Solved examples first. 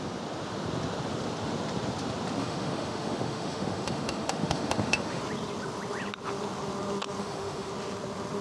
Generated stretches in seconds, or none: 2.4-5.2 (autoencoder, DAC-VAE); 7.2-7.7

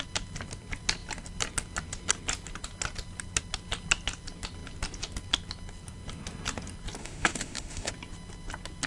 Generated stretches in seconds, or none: 7.0-7.9 (autoencoder, DAC-VAE)

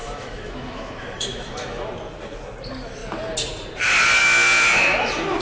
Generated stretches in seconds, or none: 0.0-1.9 (autoencoder, DAC-VAE); 4.2-5.4

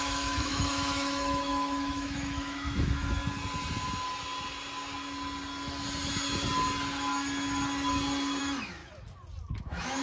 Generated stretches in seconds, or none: 0.0-3.2 (autoencoder, DAC-VAE); 8.4-8.8; 9.6-10.0